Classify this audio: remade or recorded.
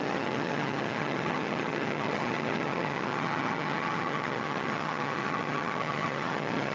remade